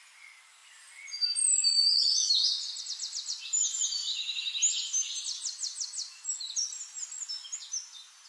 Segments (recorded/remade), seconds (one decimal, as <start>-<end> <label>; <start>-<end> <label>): 0.0-8.3 recorded